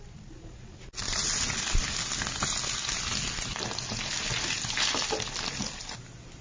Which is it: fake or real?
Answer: real